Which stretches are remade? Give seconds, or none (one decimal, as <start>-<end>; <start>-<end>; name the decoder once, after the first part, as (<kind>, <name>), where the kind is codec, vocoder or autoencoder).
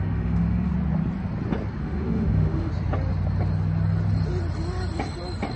0.0-0.7 (autoencoder, DAC-VAE); 1.8-2.7